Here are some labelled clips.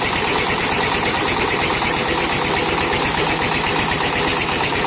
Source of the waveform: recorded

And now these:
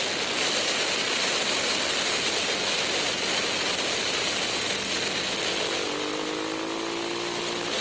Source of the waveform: recorded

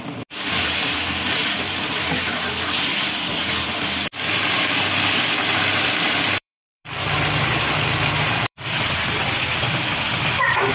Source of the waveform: remade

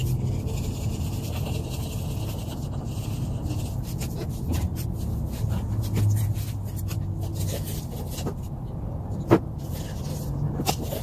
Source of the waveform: recorded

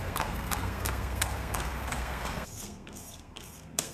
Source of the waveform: remade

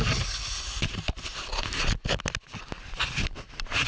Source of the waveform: recorded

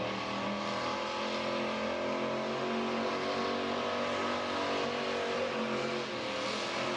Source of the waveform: recorded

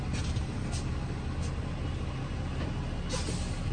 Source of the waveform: recorded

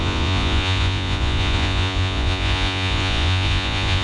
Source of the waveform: remade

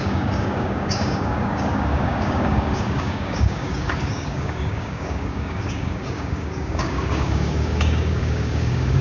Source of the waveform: remade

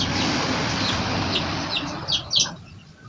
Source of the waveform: recorded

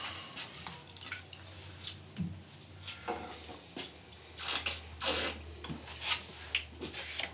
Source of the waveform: recorded